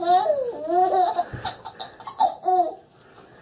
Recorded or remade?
recorded